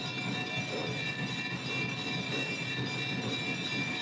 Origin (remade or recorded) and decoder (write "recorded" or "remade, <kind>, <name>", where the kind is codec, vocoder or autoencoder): recorded